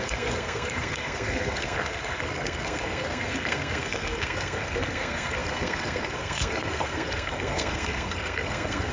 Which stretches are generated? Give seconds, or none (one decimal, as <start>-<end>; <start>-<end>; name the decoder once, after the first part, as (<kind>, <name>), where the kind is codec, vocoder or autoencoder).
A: 0.0-8.9 (codec, SNAC)